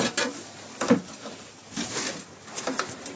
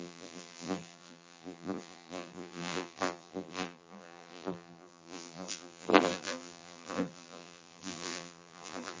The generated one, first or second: second